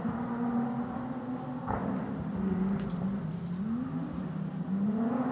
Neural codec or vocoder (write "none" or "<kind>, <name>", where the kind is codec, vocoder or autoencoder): none